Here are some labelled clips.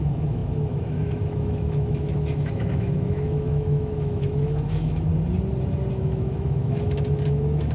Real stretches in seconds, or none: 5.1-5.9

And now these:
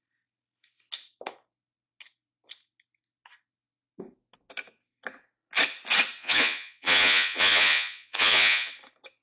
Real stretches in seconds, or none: 0.0-6.2; 8.7-9.2

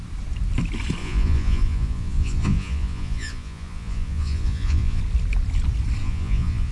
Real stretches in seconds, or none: 0.0-1.0; 5.0-6.0